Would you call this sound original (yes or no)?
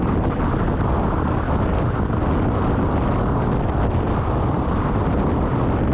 yes